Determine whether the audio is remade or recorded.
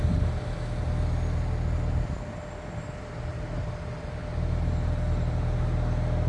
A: recorded